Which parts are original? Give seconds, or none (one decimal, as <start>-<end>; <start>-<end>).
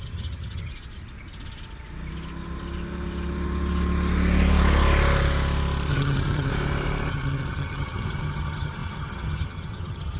0.7-5.9; 6.5-7.1